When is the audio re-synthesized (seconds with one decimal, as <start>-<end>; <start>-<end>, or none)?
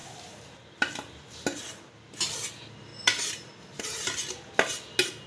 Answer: none